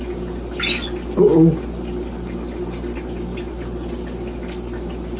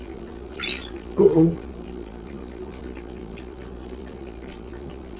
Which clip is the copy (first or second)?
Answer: second